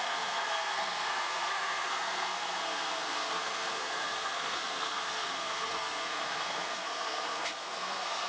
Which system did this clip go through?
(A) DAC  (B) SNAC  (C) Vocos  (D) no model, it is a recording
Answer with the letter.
B